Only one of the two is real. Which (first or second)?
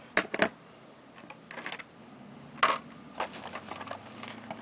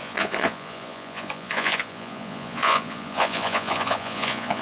first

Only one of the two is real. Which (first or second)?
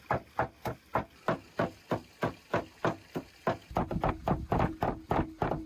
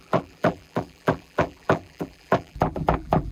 first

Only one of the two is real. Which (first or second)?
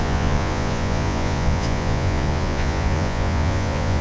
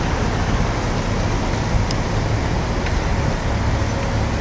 second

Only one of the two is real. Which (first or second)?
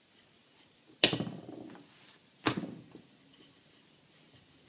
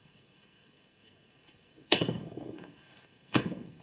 first